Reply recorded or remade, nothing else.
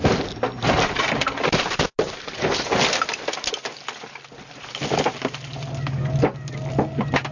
recorded